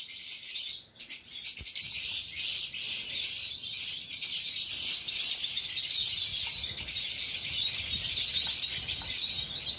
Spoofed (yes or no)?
no